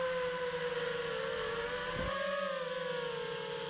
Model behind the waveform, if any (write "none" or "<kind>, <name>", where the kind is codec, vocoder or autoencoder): none